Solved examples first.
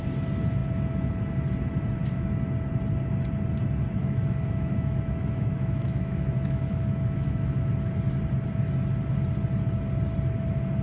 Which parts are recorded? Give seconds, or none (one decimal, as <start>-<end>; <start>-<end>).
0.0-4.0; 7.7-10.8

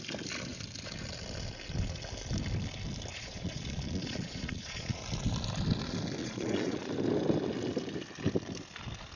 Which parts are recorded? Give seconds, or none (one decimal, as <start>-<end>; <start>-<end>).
0.0-3.1; 5.0-6.2; 6.9-9.2

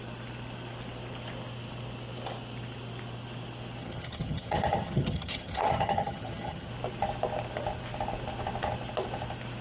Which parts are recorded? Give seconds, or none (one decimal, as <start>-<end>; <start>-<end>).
0.0-3.8; 6.7-9.6

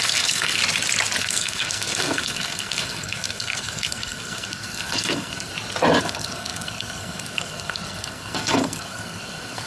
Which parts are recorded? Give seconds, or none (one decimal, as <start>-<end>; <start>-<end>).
0.6-1.2; 5.5-6.0